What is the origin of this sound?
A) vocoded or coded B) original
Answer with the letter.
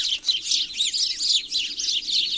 B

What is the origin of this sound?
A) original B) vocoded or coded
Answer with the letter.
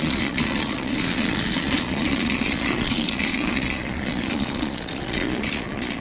B